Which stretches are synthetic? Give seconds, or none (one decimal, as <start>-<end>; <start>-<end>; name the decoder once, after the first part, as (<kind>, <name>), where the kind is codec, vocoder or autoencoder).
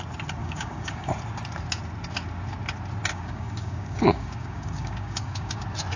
0.4-1.1 (codec, DAC); 3.1-5.6